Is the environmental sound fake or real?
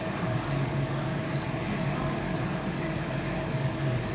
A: fake